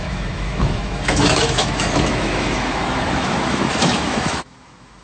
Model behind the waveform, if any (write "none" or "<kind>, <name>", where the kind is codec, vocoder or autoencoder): autoencoder, DAC-VAE